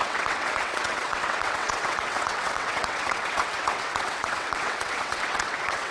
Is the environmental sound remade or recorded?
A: remade